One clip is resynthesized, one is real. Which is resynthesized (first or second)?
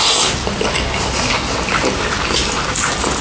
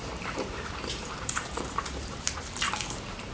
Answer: second